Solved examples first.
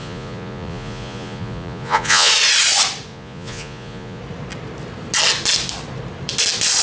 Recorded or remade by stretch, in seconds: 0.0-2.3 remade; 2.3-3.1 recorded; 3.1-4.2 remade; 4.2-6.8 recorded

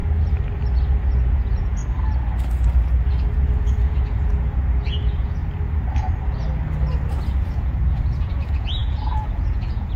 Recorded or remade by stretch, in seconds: 0.0-0.9 recorded; 0.9-1.8 remade; 1.8-3.1 recorded; 3.1-5.4 remade; 5.4-7.3 recorded; 7.3-10.0 remade

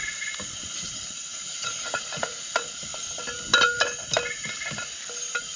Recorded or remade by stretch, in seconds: 0.0-2.7 remade; 2.7-5.6 recorded

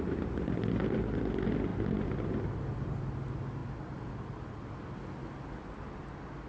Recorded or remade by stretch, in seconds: 0.0-6.5 recorded

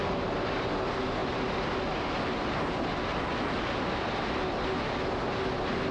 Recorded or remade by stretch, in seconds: 0.0-5.9 recorded

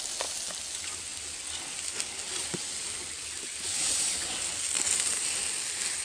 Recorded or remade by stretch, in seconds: 0.0-6.0 recorded